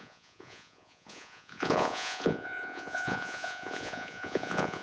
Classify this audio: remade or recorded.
remade